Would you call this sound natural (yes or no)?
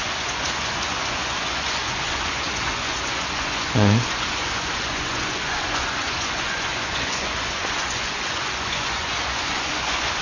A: no